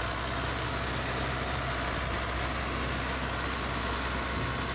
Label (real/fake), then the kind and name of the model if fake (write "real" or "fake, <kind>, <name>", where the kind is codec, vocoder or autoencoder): real